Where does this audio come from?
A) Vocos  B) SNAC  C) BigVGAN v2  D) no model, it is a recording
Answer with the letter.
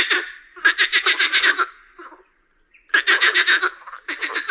D